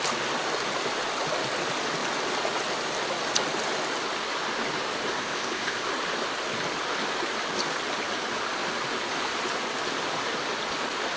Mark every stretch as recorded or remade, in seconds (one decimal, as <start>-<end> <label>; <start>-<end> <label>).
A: 0.0-5.1 recorded; 5.1-5.9 remade; 5.9-11.2 recorded